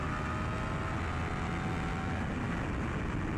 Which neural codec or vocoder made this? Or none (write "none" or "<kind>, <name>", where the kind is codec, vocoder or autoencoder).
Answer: none